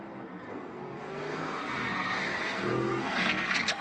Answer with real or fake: fake